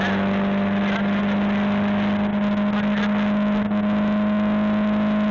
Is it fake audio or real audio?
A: real